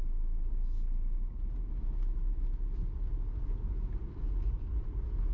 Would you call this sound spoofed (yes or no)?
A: no